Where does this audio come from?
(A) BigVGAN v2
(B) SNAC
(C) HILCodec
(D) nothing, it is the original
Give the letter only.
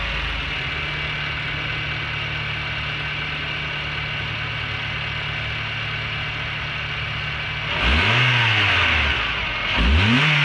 D